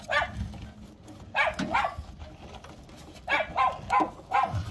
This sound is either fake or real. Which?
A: real